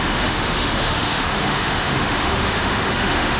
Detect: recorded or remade remade